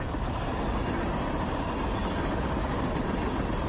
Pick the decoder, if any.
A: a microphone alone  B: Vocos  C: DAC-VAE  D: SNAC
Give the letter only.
A